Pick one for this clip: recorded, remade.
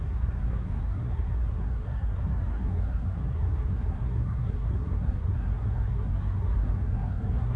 remade